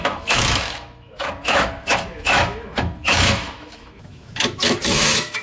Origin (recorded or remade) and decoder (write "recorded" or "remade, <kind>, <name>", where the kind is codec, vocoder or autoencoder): remade, autoencoder, DAC-VAE